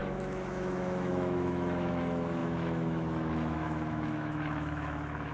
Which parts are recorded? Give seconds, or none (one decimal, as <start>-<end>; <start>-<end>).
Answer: none